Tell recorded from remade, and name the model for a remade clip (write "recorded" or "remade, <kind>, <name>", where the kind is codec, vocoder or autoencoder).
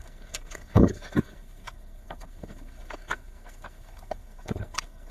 remade, codec, SNAC